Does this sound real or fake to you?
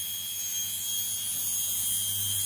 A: real